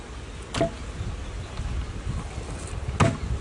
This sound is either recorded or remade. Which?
recorded